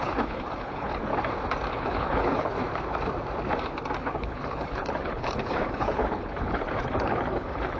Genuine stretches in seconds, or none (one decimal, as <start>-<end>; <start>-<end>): 1.1-1.7; 2.6-4.0